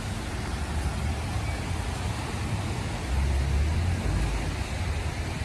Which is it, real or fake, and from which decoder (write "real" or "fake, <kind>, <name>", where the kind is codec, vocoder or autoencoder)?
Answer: real